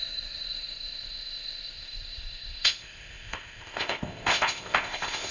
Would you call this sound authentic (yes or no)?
no